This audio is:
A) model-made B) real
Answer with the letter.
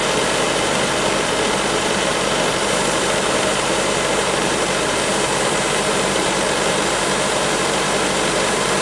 A